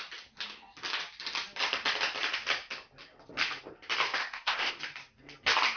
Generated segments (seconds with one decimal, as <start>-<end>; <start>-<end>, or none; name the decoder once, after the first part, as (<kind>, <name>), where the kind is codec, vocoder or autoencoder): 4.2-4.8 (codec, ZipCodec)